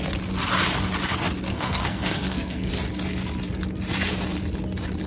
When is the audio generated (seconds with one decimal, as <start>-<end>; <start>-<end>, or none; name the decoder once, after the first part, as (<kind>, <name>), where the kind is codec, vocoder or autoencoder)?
1.5-2.7 (codec, SNAC)